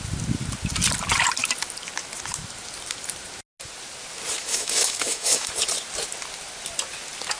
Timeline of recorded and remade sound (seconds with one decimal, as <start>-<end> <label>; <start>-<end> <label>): 0.0-4.4 recorded; 4.4-5.5 remade; 5.5-7.4 recorded